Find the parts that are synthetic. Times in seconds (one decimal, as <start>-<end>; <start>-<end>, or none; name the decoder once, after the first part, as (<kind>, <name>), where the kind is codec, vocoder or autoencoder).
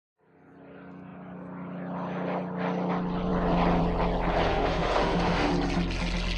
4.5-5.5 (autoencoder, DAC-VAE)